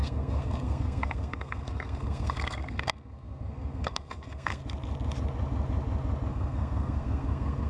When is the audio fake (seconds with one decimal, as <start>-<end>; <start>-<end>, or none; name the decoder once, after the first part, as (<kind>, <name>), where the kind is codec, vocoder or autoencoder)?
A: 0.0-4.6 (codec, SNAC); 6.3-7.7